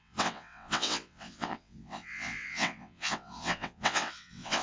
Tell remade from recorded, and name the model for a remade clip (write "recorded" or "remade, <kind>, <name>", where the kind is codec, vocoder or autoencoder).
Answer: remade, vocoder, WaveNeXt